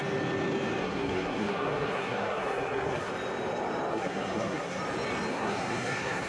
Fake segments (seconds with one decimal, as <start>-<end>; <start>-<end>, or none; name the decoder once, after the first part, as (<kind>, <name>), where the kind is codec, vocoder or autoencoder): 0.8-3.1 (codec, SNAC); 3.9-4.8; 5.3-6.3

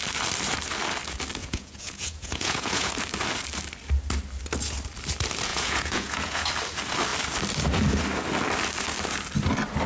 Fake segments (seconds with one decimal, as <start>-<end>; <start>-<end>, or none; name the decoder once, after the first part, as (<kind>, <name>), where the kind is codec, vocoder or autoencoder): 1.4-2.9 (vocoder, Vocos); 5.5-6.5

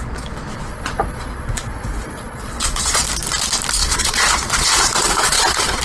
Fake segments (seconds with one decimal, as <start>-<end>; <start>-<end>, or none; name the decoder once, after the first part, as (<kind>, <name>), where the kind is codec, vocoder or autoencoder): 0.5-3.0 (vocoder, Vocos); 3.8-5.8

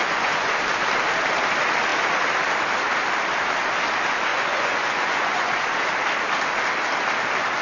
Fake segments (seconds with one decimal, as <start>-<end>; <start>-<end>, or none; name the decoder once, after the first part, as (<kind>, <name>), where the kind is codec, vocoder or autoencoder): 0.0-0.5 (vocoder, Vocos); 4.3-5.5

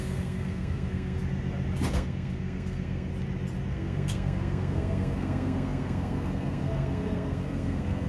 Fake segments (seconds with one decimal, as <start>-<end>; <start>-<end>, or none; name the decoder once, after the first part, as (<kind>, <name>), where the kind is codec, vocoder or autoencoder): 0.0-1.2 (codec, SNAC); 1.9-3.1; 3.7-8.1

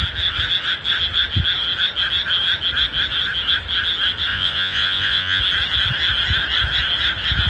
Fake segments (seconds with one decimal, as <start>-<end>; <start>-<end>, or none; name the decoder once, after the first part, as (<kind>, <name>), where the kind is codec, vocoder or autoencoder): 4.3-5.4 (vocoder, Vocos)

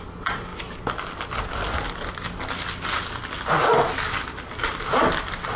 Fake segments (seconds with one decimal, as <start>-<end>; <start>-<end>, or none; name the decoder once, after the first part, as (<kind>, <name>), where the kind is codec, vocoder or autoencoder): none

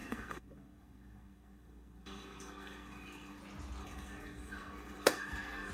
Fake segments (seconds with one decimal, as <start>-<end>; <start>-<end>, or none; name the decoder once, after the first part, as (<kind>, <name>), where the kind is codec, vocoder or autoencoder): 0.0-3.4 (codec, SNAC); 3.8-5.7